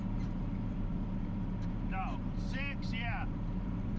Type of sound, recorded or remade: remade